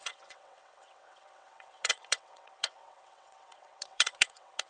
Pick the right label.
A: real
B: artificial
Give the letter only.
B